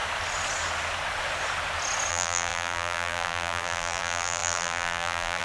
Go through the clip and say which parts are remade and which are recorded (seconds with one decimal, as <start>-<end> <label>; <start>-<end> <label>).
0.0-2.1 recorded; 2.1-5.4 remade